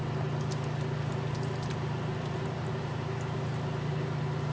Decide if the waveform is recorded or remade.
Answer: recorded